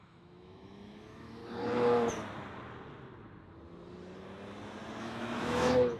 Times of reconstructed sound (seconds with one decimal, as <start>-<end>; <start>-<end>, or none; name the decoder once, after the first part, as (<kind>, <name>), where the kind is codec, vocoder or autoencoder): 0.0-1.4 (autoencoder, DAC-VAE); 5.0-6.0